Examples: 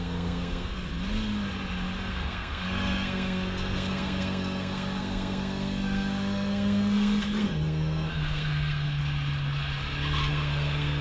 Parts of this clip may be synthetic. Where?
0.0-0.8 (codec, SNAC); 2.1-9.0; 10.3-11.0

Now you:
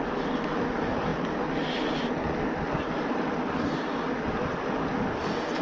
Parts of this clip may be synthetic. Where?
none